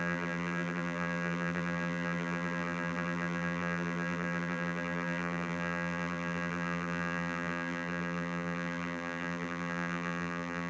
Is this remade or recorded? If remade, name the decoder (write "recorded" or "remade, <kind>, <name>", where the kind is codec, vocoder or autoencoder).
remade, vocoder, BigVGAN v2